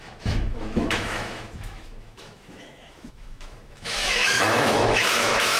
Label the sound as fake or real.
fake